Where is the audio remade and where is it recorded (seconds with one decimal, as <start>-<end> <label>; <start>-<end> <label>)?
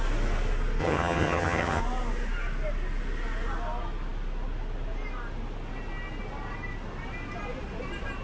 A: 0.0-0.8 recorded; 0.8-1.8 remade; 1.8-8.2 recorded